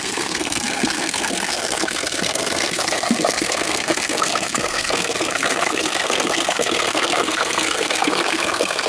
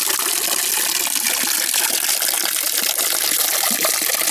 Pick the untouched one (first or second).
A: second